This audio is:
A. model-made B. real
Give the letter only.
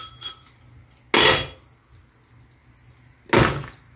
B